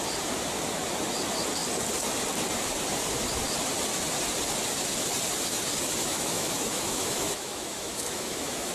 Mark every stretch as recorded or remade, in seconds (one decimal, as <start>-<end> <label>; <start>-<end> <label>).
0.0-6.0 recorded; 6.0-8.7 remade